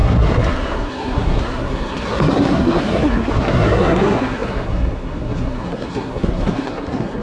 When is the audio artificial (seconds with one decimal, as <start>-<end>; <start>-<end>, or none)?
0.0-7.2